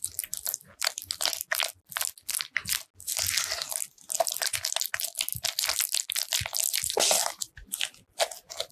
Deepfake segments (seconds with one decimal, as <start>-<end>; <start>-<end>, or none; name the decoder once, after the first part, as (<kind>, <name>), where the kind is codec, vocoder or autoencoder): none

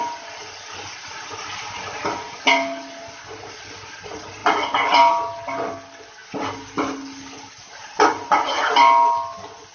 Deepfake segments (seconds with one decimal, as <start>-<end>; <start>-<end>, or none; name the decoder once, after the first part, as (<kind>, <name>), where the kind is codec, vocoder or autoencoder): none

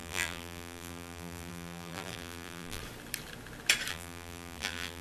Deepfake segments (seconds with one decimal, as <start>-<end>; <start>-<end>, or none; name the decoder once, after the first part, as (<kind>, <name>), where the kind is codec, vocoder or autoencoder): 0.0-2.8 (vocoder, BigVGAN v2); 3.9-5.0

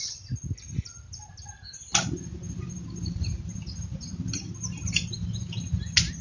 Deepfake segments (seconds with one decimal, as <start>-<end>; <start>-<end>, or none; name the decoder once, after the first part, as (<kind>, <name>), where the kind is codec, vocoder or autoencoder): 3.0-3.6 (vocoder, BigVGAN v2)

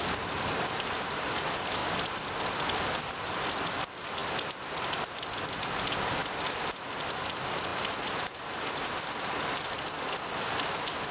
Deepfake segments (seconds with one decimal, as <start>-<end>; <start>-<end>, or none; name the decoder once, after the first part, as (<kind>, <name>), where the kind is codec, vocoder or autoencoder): none

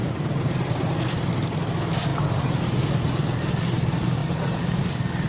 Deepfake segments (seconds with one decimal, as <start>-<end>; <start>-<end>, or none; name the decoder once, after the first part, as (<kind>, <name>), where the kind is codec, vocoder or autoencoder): 0.0-1.1 (vocoder, BigVGAN v2); 2.1-2.9; 4.2-4.8

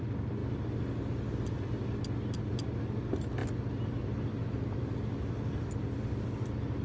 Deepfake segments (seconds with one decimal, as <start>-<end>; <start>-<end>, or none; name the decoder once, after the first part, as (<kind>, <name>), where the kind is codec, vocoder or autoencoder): none